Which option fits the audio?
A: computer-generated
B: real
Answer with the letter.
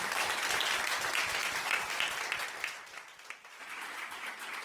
B